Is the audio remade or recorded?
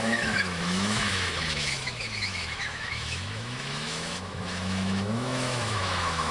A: remade